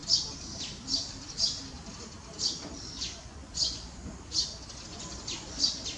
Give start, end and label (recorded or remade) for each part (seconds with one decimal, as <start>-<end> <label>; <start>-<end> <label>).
0.0-2.8 recorded; 2.8-4.4 remade; 4.4-4.9 recorded; 4.9-5.6 remade; 5.6-6.0 recorded